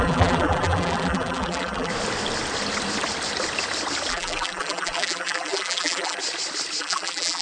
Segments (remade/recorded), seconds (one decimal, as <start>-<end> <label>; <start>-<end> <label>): 0.0-1.9 remade; 1.9-4.1 recorded; 4.1-6.2 remade; 6.2-6.8 recorded; 6.8-7.4 remade